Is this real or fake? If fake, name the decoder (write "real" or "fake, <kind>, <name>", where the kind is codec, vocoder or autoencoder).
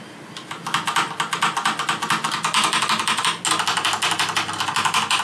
real